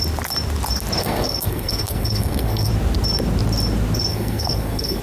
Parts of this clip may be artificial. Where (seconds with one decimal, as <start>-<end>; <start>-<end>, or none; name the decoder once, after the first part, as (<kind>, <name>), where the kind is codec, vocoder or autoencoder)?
1.0-2.7 (codec, SNAC); 4.1-5.0